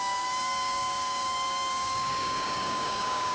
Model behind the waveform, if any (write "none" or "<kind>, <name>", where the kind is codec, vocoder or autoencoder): codec, DAC